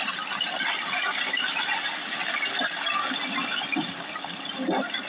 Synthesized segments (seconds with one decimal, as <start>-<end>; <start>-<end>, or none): none